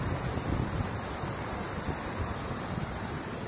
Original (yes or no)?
no